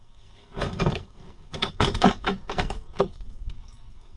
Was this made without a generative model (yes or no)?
no